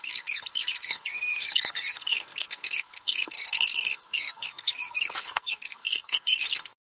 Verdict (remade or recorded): remade